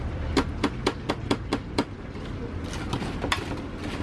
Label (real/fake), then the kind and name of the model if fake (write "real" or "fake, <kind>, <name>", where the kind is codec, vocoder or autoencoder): real